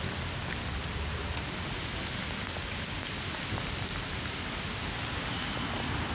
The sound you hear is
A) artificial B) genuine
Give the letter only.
B